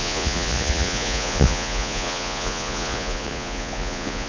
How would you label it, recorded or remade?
remade